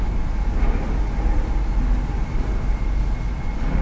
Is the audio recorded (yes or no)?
yes